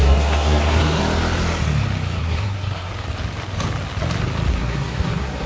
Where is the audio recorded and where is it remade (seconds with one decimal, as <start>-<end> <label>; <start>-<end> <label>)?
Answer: 0.0-1.0 remade; 1.0-2.2 recorded; 2.2-2.9 remade; 2.9-4.5 recorded; 4.5-5.5 remade